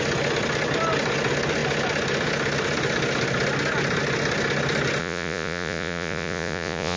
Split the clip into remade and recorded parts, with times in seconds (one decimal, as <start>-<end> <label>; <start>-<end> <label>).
0.0-5.0 recorded; 5.0-7.0 remade